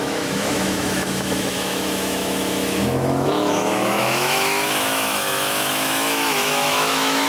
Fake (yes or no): yes